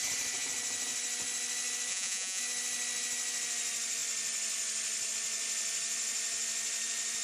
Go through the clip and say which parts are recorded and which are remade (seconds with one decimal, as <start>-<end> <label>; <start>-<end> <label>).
0.0-1.9 recorded; 1.9-2.4 remade; 2.4-7.2 recorded